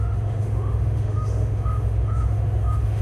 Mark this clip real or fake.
fake